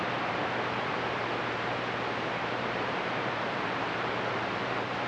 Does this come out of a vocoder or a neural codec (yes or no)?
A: yes